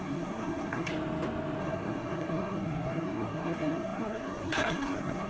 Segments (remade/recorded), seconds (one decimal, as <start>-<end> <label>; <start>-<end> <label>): 0.0-0.9 remade; 0.9-1.6 recorded; 1.6-5.3 remade